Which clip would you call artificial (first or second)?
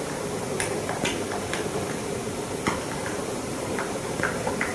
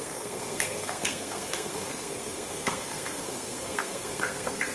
second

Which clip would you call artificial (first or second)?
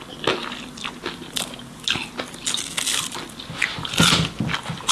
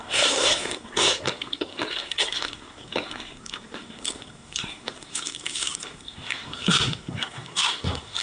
second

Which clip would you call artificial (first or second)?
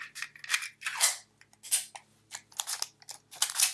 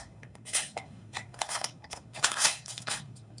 second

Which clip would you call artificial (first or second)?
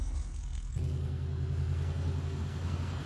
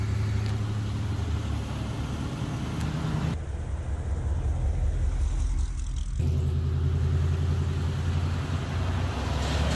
first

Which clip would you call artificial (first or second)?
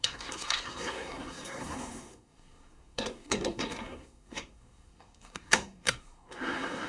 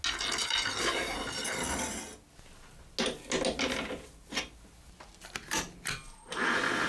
first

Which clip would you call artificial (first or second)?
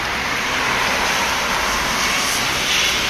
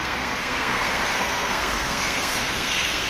second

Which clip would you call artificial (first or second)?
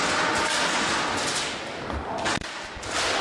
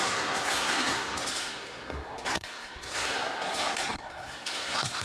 second